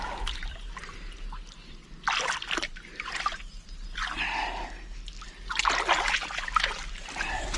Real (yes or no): yes